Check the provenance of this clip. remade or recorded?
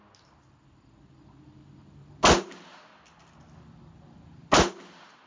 recorded